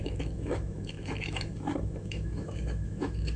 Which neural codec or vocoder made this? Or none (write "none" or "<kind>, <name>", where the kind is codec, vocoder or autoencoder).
autoencoder, DAC-VAE